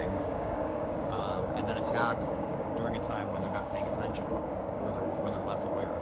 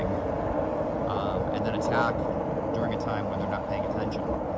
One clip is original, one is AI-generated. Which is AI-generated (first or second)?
first